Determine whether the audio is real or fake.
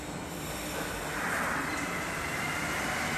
real